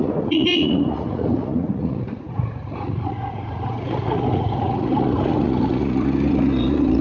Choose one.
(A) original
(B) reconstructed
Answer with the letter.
B